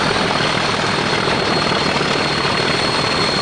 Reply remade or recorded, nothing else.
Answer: recorded